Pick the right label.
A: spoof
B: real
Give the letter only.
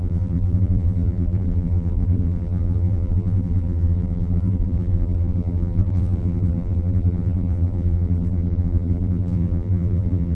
A